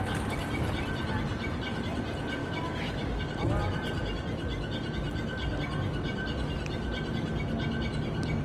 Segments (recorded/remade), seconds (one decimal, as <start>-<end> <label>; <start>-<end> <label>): 0.0-2.4 recorded; 2.4-3.2 remade; 3.2-8.4 recorded